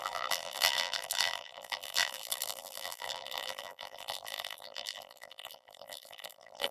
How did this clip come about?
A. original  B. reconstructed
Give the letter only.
B